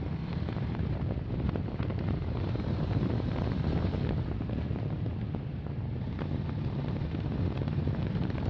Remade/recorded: remade